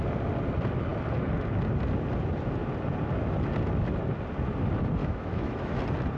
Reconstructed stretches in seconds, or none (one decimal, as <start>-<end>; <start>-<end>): 5.0-5.8